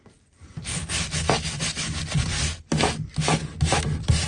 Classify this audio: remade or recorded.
recorded